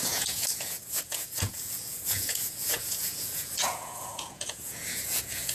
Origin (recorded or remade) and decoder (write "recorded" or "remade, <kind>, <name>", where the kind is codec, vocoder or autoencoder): remade, vocoder, Vocos